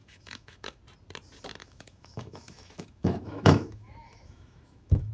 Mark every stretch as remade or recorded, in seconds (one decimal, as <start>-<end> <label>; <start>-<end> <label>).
0.0-0.8 remade; 0.8-1.6 recorded; 1.6-5.1 remade